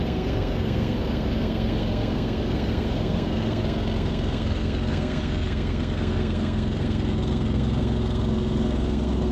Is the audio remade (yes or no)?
yes